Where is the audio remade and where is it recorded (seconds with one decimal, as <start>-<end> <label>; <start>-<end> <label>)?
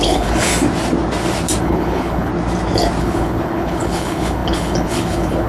0.0-0.5 remade; 0.5-1.6 recorded; 1.6-2.3 remade; 2.3-3.0 recorded; 3.0-5.5 remade